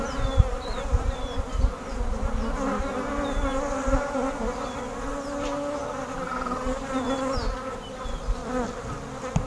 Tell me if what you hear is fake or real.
real